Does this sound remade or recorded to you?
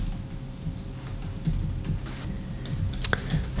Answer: recorded